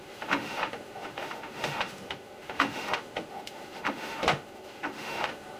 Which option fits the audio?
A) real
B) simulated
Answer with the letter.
B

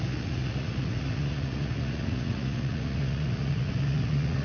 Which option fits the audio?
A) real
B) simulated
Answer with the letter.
B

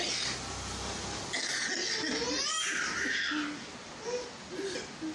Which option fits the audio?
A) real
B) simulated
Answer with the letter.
A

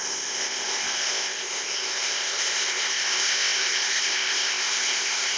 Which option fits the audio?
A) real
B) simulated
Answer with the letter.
B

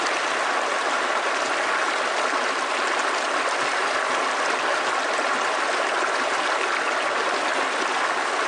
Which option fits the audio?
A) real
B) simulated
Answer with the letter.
A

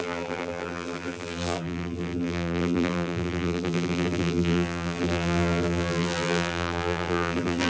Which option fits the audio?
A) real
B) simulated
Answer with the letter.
B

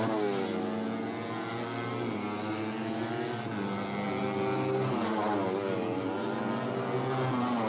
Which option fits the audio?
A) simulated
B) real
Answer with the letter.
B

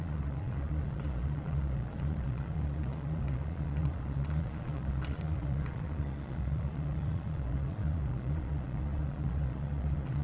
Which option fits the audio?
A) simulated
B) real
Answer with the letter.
A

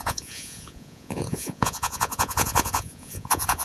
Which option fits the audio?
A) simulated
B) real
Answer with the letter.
A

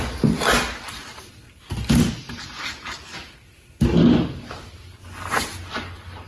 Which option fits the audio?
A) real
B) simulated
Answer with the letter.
A